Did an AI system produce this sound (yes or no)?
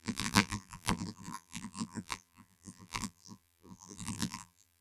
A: yes